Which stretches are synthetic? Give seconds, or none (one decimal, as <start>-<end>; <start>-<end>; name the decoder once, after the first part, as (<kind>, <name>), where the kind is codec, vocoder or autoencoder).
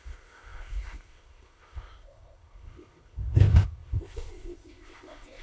0.0-5.4 (codec, ZipCodec)